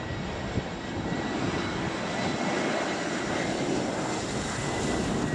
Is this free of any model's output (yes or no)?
yes